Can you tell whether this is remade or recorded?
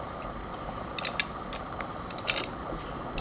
recorded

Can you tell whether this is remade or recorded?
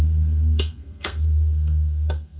remade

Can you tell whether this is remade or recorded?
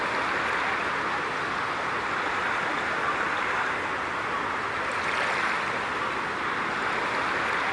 recorded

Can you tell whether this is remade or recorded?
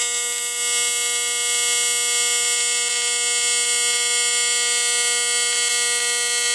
recorded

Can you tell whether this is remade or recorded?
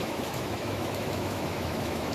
remade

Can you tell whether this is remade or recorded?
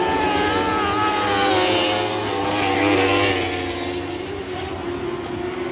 recorded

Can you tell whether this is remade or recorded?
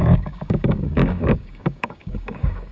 remade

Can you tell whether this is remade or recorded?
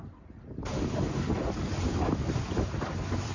recorded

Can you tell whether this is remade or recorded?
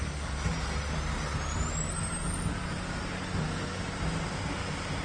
recorded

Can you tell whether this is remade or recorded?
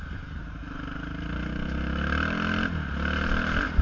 recorded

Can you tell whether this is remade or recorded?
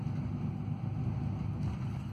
recorded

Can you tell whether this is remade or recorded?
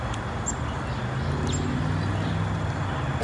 recorded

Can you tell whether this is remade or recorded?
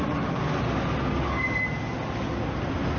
recorded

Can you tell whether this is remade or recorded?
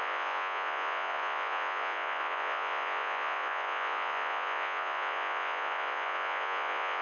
remade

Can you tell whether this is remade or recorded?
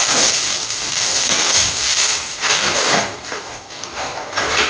remade